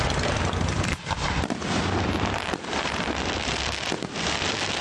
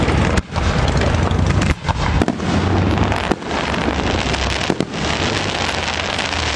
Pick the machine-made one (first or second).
first